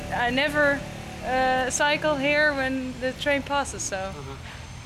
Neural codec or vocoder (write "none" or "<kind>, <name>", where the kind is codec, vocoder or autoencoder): none